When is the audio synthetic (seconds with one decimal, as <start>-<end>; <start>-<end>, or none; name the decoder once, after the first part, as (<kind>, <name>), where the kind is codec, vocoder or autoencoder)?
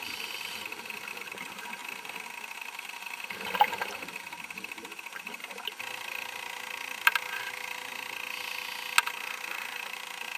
0.0-5.4 (vocoder, BigVGAN v2); 9.4-10.4